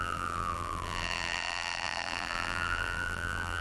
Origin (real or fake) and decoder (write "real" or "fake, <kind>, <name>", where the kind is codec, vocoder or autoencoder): fake, vocoder, BigVGAN v2